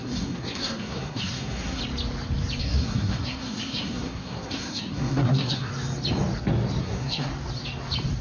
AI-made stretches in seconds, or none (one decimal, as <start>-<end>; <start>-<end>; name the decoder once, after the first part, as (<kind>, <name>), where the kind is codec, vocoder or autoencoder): 0.0-1.8 (codec, SNAC); 2.6-5.7; 6.8-7.3